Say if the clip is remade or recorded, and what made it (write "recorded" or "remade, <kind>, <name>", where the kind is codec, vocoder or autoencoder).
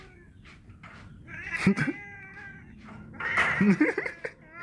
recorded